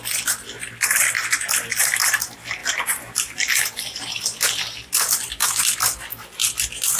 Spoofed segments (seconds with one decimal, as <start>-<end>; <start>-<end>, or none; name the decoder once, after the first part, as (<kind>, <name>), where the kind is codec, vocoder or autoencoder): 2.6-4.2 (vocoder, BigVGAN v2)